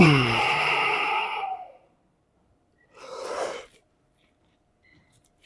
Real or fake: fake